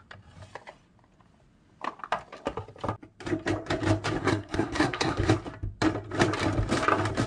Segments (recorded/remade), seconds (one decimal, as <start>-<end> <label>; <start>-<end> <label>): 0.0-4.2 recorded; 4.2-5.3 remade; 5.3-7.3 recorded